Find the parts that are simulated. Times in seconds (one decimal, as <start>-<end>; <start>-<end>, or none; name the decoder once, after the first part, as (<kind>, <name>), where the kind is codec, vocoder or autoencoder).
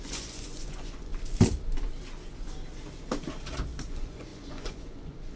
0.0-1.1 (vocoder, Vocos); 3.9-5.4